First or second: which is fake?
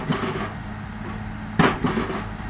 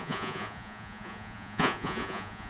second